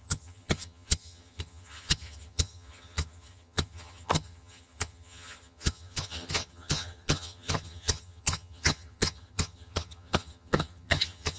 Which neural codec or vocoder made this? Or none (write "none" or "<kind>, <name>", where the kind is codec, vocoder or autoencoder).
vocoder, HiFi-GAN